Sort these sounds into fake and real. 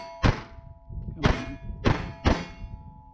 real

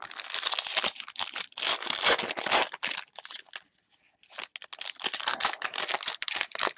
real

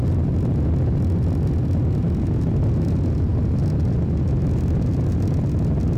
real